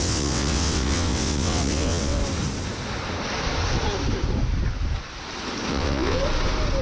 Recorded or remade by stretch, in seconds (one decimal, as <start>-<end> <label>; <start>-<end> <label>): 0.0-2.2 remade; 2.2-5.7 recorded; 5.7-6.2 remade; 6.2-6.8 recorded